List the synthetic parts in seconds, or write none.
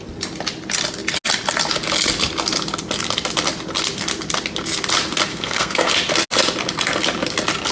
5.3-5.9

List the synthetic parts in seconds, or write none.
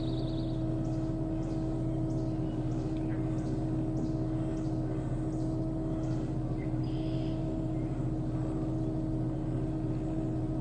none